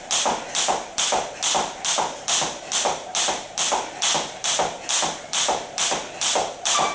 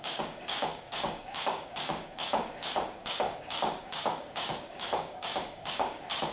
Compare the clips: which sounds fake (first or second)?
second